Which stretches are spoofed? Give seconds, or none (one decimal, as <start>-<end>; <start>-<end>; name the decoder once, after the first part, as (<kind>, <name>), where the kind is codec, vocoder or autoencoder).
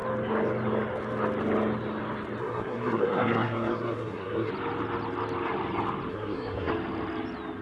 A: 2.4-4.5 (codec, SNAC); 6.1-6.7